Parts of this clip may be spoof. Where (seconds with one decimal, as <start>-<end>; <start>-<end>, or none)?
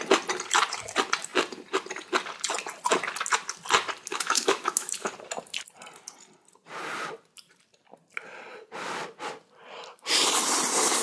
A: 4.1-5.1